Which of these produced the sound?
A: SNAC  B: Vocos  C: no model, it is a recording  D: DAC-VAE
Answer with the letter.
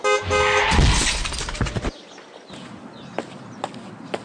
C